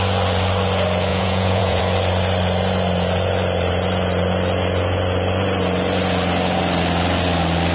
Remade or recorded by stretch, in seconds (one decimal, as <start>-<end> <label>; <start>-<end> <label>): 0.0-1.1 recorded; 1.1-1.8 remade; 1.8-7.7 recorded